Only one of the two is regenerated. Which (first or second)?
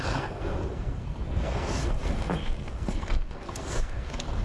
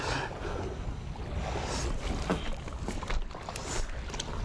first